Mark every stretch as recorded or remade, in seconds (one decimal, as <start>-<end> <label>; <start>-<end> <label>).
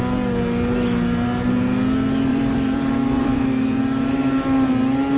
0.0-2.3 recorded; 2.3-3.8 remade; 3.8-5.2 recorded